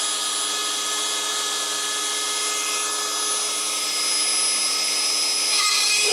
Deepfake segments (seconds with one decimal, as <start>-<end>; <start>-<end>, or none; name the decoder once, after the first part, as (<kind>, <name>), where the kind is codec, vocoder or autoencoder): none

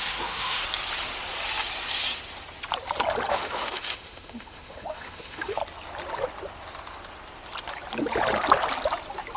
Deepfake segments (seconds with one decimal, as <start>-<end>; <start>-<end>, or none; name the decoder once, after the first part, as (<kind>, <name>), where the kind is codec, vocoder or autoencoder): 0.0-0.6 (autoencoder, DAC-VAE); 3.3-5.6

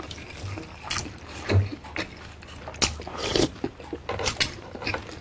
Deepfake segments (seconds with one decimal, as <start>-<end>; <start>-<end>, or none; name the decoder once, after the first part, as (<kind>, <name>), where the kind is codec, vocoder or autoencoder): none